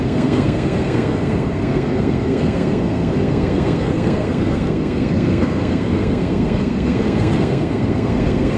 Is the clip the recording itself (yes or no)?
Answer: no